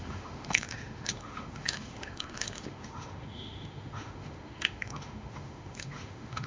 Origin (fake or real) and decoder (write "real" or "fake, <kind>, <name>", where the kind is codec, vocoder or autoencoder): fake, autoencoder, DAC-VAE